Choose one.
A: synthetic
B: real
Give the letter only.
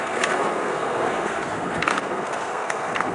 A